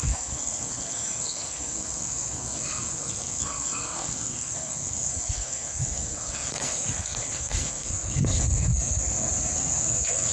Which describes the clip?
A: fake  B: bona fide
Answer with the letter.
A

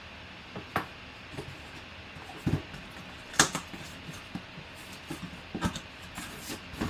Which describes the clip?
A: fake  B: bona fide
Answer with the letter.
B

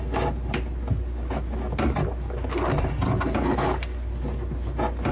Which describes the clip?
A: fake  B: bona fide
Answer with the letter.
B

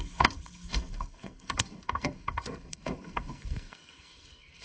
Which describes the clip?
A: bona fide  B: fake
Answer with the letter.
B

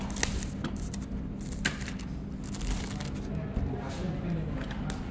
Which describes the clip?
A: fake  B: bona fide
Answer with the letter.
B